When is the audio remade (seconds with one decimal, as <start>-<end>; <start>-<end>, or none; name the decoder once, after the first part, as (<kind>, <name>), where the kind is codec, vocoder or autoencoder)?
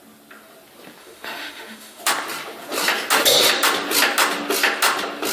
1.0-2.0 (autoencoder, DAC-VAE)